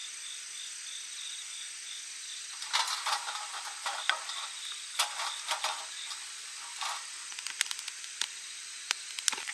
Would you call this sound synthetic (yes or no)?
no